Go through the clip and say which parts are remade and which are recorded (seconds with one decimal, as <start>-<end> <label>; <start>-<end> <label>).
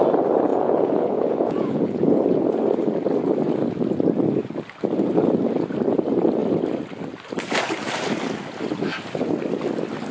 0.0-0.5 recorded; 0.5-2.2 remade; 2.2-10.1 recorded